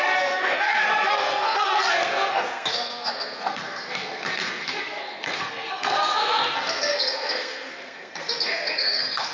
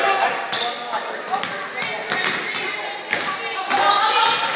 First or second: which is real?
second